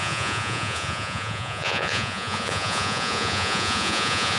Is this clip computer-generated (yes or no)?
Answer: yes